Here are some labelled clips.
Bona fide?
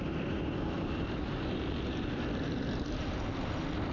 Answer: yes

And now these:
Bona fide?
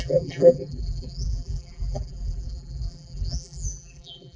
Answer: no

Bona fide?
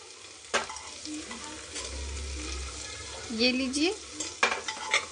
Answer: yes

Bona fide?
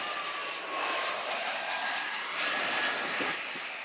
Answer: no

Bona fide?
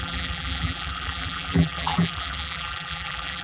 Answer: no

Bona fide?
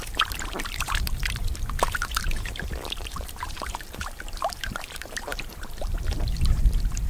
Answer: no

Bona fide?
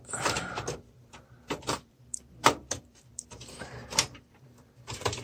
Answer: no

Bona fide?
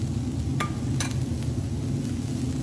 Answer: yes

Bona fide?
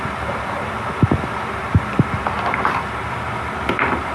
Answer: no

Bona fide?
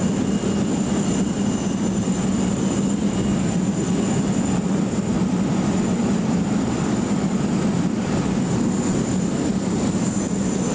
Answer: no